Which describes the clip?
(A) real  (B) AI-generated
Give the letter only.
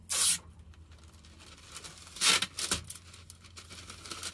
A